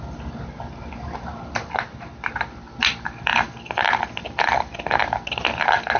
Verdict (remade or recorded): remade